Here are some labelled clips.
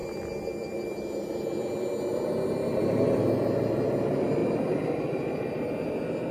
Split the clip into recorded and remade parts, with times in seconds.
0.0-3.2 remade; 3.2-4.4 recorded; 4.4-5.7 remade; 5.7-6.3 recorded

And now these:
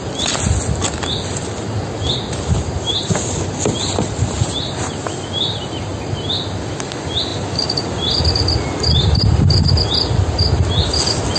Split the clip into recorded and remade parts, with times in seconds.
0.0-7.3 recorded; 7.3-10.3 remade; 10.3-11.4 recorded